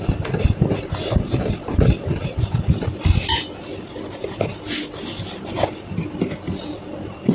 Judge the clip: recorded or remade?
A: recorded